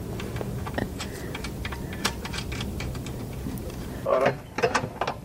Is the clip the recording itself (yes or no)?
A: yes